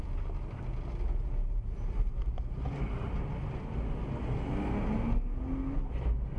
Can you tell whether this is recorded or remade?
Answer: recorded